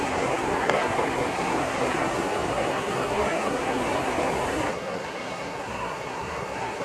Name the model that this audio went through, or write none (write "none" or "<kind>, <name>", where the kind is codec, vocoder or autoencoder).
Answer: codec, SNAC